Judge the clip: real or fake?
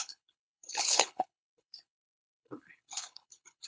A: fake